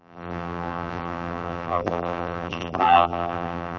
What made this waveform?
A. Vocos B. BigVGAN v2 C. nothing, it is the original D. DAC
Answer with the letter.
B